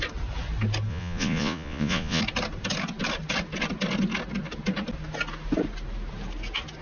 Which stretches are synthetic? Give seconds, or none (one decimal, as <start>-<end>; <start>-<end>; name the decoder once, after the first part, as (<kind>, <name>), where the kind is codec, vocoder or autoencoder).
0.9-2.2 (vocoder, Vocos)